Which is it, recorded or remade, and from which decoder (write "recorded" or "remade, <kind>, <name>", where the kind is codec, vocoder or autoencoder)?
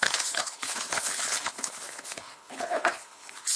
remade, codec, HILCodec